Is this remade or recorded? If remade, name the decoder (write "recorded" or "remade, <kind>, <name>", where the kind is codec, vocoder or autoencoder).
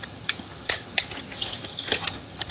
remade, vocoder, HiFi-GAN